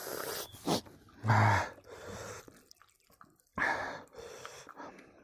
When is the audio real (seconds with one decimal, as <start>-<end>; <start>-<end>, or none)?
0.0-3.5